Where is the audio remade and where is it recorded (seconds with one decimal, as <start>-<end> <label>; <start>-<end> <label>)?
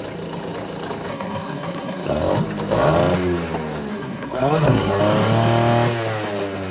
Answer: 0.0-1.1 recorded; 1.1-2.2 remade; 2.2-3.9 recorded; 3.9-5.0 remade; 5.0-6.7 recorded